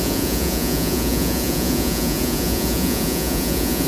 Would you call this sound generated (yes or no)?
yes